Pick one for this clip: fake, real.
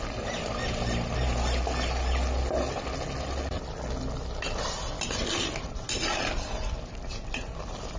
real